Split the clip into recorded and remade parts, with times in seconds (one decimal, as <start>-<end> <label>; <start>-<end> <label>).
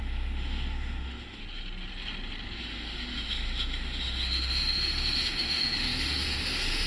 0.0-1.4 remade; 1.4-2.6 recorded; 2.6-6.9 remade